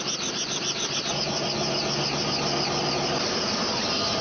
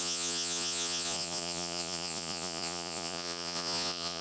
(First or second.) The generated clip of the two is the second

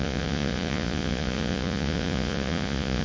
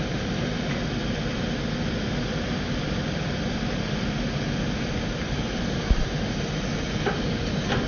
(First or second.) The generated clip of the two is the first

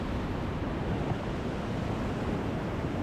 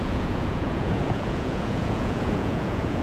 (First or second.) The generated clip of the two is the second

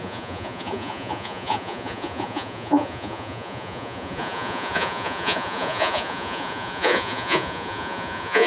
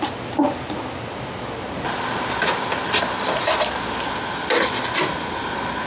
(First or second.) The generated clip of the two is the first